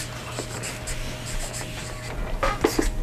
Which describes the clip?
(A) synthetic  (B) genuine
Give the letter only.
B